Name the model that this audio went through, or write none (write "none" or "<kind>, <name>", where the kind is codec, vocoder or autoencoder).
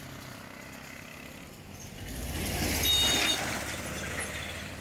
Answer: none